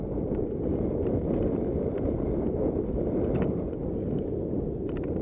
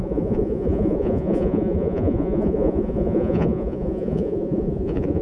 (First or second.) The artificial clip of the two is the second